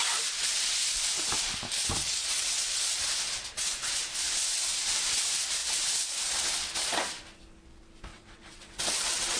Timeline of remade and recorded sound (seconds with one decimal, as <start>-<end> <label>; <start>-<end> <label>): 0.0-2.0 recorded; 2.0-2.8 remade; 2.8-8.1 recorded; 8.1-9.4 remade